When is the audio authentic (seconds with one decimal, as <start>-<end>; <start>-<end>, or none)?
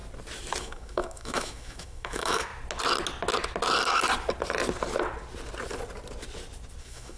0.0-0.6; 2.5-6.8